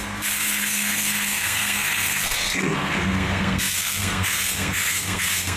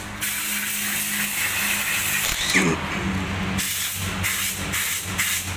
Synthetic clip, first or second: first